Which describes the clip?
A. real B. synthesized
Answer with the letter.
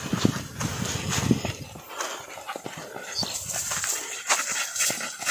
A